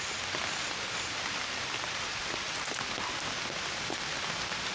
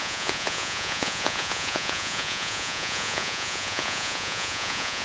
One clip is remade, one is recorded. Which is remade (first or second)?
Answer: second